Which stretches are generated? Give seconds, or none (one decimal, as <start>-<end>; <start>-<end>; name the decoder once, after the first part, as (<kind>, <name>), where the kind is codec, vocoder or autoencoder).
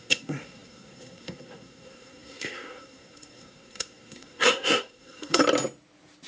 0.0-5.4 (codec, SNAC)